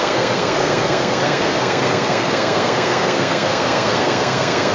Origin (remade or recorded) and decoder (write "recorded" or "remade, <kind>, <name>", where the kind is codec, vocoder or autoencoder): remade, codec, SNAC